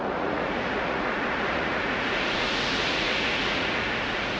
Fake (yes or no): yes